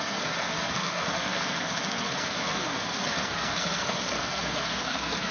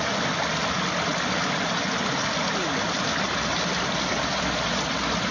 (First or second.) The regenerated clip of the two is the first